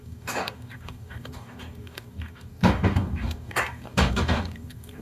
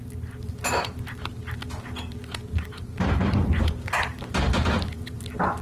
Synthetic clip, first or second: first